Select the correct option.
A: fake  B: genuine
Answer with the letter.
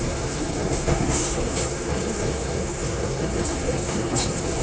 A